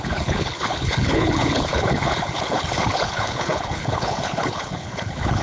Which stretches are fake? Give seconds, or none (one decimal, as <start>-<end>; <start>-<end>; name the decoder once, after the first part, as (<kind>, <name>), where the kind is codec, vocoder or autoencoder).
0.0-5.4 (codec, HILCodec)